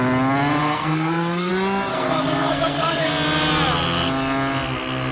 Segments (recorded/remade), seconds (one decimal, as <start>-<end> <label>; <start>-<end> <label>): 0.0-0.6 recorded; 0.6-1.5 remade; 1.5-1.9 recorded; 1.9-3.1 remade; 3.1-5.1 recorded